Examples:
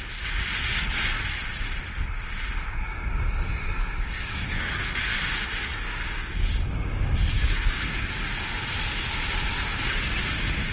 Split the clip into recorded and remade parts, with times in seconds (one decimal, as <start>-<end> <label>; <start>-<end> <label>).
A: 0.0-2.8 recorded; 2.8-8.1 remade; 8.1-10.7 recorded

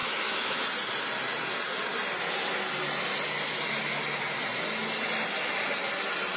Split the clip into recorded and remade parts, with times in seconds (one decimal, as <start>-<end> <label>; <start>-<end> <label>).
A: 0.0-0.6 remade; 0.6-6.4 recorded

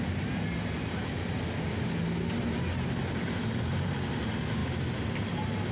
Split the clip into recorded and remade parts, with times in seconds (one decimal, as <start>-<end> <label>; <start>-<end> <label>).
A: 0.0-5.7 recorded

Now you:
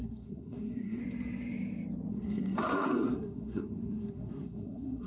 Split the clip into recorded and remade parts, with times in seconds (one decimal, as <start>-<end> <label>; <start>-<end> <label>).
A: 0.0-1.0 remade; 1.0-2.1 recorded; 2.1-5.1 remade

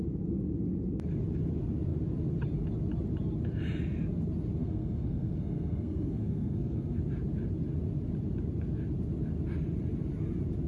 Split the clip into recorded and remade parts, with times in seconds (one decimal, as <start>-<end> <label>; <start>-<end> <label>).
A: 0.0-4.6 recorded; 4.6-7.0 remade; 7.0-10.7 recorded